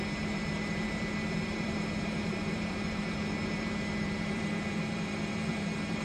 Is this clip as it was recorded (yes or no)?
no